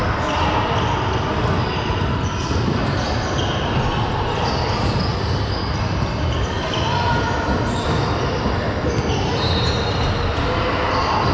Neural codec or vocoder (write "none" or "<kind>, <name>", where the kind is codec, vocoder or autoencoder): none